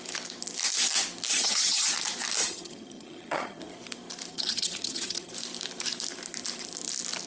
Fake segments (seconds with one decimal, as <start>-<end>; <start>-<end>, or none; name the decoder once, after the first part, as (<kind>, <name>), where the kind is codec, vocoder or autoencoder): 1.3-1.9 (vocoder, HiFi-GAN); 2.4-3.6; 4.3-5.3